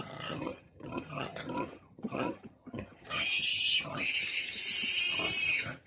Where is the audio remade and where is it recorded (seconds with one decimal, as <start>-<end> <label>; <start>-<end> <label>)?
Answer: 0.0-4.6 remade; 4.6-5.5 recorded; 5.5-5.9 remade